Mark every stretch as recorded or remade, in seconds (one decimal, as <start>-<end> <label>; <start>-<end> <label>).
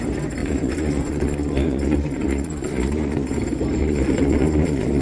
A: 0.0-0.4 recorded; 0.4-3.4 remade; 3.4-3.8 recorded; 3.8-5.0 remade